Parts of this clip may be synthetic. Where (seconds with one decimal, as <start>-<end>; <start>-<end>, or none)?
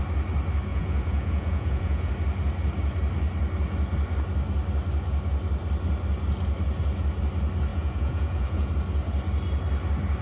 0.7-2.1; 7.7-8.7